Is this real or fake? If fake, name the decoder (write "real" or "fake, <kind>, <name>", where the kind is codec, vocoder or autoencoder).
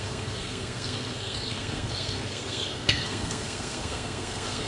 fake, codec, SNAC